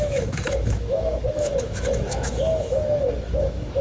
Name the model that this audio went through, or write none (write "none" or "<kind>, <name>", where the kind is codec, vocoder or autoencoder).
autoencoder, DAC-VAE